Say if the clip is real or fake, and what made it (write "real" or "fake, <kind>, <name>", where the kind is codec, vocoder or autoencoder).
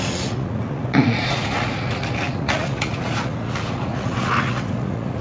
fake, vocoder, Vocos